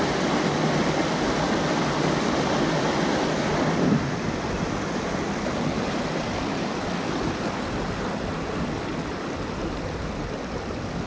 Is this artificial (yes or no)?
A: no